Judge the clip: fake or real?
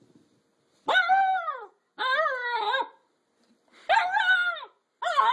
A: real